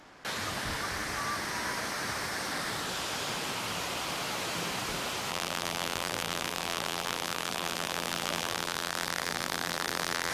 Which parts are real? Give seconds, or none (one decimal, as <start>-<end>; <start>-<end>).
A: 0.0-5.3

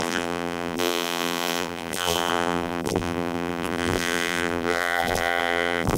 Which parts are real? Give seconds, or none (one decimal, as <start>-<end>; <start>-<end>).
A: none

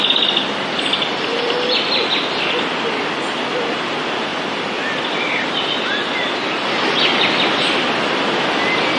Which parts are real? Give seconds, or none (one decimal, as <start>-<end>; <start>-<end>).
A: 0.0-9.0

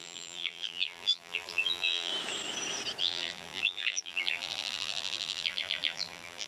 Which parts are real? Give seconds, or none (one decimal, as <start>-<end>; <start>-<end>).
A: 2.1-3.0

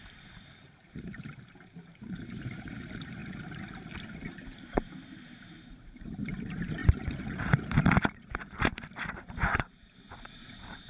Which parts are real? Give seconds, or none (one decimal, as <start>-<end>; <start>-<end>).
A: 3.2-4.3

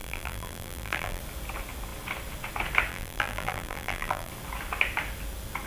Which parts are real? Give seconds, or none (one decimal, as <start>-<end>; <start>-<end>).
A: 1.2-2.9; 4.3-5.7